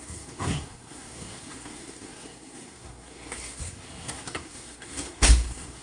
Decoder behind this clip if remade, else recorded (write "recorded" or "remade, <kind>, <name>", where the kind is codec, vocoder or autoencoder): remade, codec, SNAC